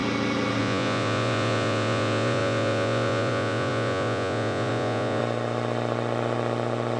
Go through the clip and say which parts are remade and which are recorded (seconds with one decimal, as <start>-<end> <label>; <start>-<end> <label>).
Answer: 0.0-0.6 recorded; 0.6-5.2 remade; 5.2-7.0 recorded